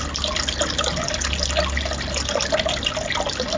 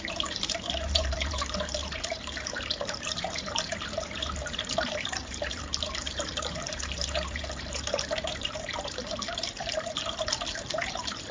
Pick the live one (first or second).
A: first